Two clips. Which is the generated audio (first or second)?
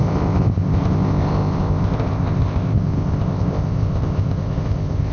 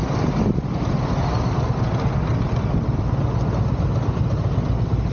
first